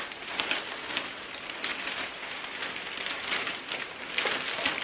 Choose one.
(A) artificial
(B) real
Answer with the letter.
B